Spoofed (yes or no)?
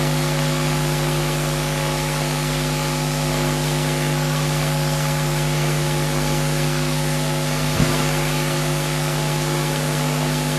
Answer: yes